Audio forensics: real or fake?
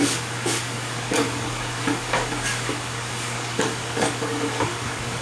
fake